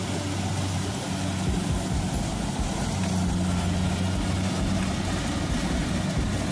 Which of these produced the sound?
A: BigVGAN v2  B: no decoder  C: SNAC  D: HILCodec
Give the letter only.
B